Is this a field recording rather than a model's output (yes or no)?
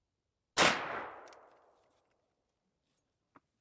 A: yes